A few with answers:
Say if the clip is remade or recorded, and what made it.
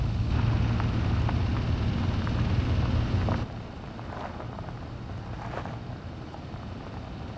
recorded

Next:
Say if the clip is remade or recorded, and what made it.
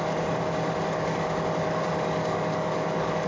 remade, codec, DAC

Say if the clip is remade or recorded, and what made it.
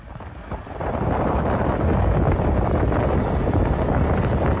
recorded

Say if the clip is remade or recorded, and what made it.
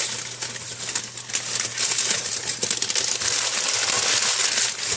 recorded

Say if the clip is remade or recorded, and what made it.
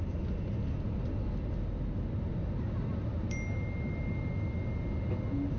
recorded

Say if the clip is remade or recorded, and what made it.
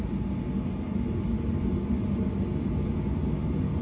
recorded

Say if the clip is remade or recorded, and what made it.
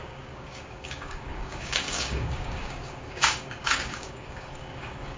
remade, codec, DAC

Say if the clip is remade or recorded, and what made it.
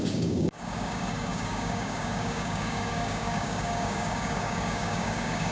remade, codec, DAC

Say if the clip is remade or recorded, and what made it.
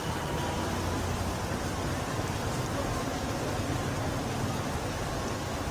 recorded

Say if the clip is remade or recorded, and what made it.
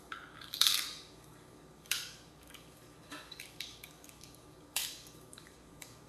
remade, codec, DAC